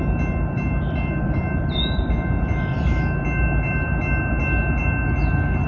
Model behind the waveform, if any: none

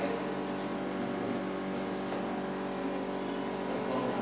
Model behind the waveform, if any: none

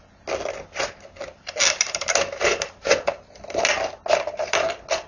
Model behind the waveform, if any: none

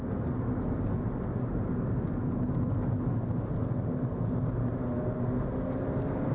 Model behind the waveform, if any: none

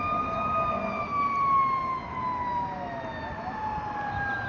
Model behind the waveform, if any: none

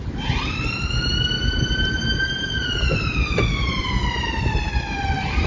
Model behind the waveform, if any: none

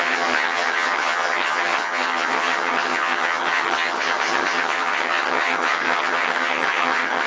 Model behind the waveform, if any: vocoder, HiFi-GAN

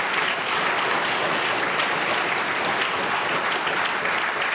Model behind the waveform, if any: none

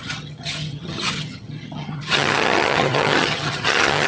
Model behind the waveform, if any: vocoder, HiFi-GAN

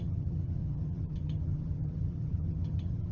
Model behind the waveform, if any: vocoder, HiFi-GAN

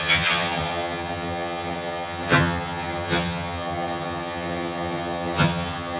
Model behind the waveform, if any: vocoder, HiFi-GAN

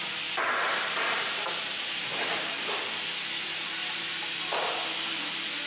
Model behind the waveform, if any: none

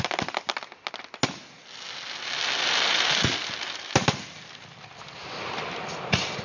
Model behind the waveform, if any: none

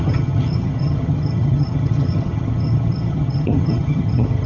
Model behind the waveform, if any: vocoder, HiFi-GAN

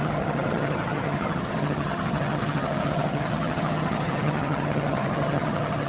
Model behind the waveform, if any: vocoder, HiFi-GAN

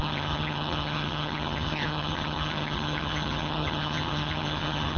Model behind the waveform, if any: vocoder, HiFi-GAN